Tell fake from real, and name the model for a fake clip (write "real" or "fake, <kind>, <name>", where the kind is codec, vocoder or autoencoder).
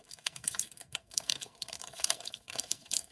fake, codec, SNAC